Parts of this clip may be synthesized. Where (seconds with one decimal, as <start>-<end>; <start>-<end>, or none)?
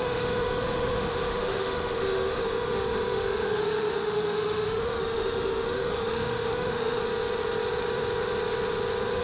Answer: 0.0-7.0